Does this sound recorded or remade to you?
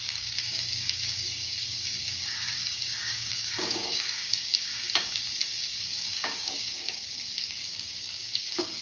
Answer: remade